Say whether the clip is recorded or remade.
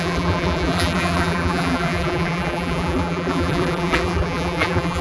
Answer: remade